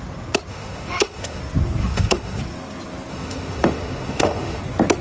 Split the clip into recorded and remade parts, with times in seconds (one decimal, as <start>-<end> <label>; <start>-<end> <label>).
0.0-0.5 recorded; 0.5-1.4 remade; 1.4-1.8 recorded; 1.8-2.4 remade; 2.4-3.1 recorded; 3.1-4.6 remade; 4.6-5.0 recorded